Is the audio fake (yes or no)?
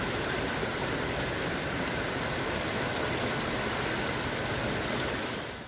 no